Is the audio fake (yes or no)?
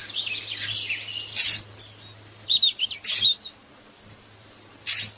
yes